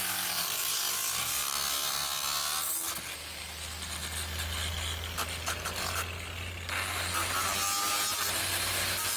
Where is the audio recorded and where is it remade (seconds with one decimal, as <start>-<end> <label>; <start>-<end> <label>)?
0.0-9.2 recorded